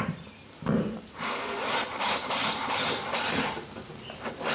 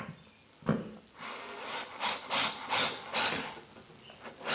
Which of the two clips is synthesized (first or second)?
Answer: first